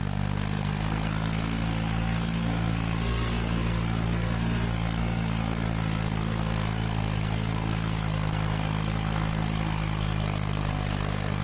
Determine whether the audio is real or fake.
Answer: fake